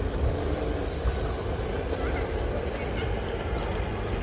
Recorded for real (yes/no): yes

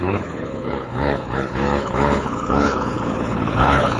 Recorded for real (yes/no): no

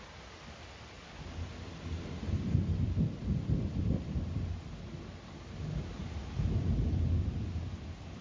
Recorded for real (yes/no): yes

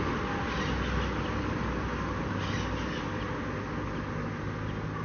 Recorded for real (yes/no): yes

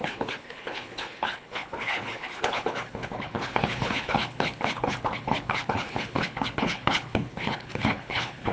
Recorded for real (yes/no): no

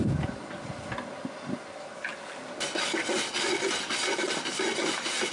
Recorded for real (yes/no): yes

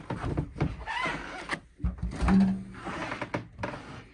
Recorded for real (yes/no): yes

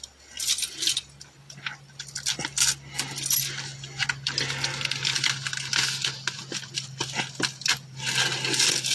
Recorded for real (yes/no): yes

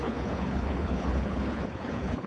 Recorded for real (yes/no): no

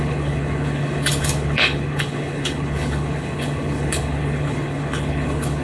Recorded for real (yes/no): no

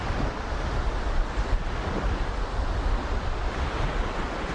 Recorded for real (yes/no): yes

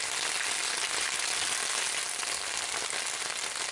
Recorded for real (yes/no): yes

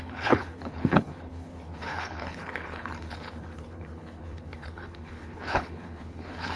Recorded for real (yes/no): no